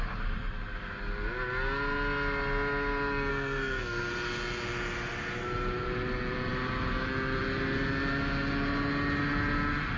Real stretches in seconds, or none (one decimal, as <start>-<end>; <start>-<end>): 0.0-3.3; 4.1-10.0